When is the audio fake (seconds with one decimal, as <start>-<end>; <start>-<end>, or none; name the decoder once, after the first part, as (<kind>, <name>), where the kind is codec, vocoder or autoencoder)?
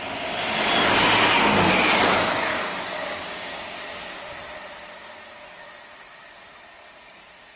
2.5-3.5 (codec, DAC)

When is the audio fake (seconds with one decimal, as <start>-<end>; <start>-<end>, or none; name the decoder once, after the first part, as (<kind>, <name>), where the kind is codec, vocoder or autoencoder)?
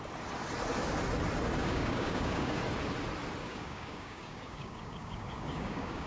1.6-2.6 (codec, DAC); 3.4-6.1